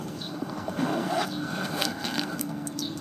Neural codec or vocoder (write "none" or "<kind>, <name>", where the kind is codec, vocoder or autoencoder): codec, SNAC